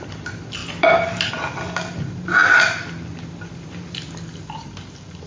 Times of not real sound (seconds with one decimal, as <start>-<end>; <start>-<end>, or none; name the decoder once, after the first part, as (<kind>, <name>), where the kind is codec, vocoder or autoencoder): none